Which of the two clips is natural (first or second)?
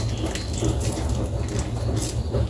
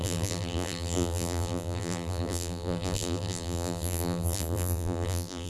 first